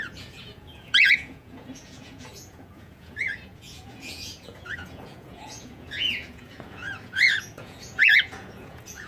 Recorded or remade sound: remade